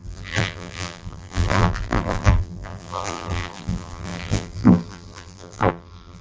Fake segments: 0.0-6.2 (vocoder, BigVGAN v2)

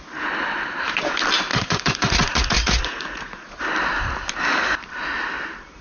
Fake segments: 1.5-3.6 (vocoder, Vocos)

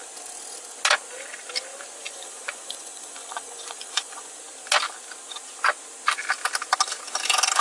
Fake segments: 2.0-4.4 (vocoder, Vocos)

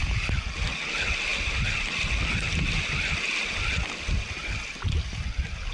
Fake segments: none

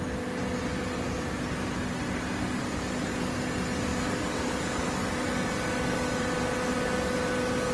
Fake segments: none

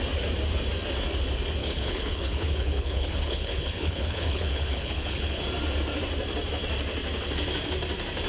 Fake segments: 1.6-5.4 (codec, HILCodec)

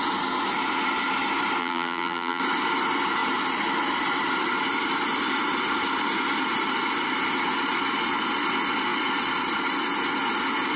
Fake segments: 1.6-2.4 (vocoder, BigVGAN v2)

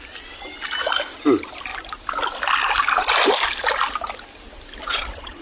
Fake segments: 4.8-5.4 (vocoder, Vocos)